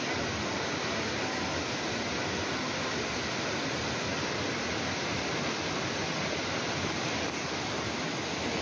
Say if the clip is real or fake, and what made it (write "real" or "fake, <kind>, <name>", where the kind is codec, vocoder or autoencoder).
real